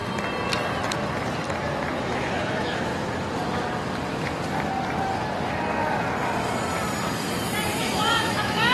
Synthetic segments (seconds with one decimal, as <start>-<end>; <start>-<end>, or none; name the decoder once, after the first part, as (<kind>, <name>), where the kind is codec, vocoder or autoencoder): 2.0-2.9 (autoencoder, DAC-VAE); 7.8-8.7